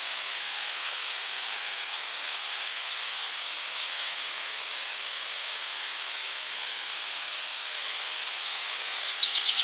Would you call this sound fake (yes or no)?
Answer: yes